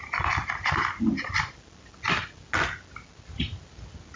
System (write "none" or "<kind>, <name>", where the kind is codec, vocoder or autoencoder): none